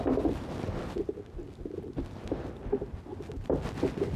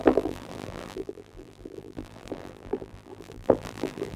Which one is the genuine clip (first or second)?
first